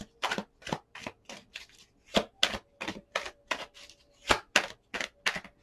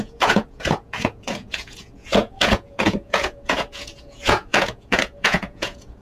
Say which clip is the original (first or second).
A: first